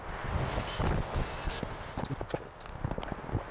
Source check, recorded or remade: recorded